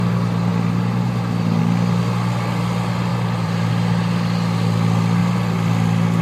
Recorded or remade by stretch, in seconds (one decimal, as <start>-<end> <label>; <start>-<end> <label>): 0.0-3.1 recorded; 3.1-3.7 remade; 3.7-6.2 recorded